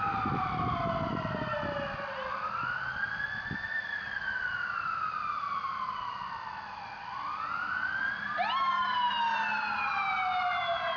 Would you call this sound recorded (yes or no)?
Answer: yes